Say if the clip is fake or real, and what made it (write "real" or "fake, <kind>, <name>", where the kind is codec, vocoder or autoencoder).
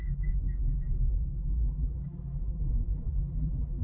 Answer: fake, vocoder, BigVGAN v2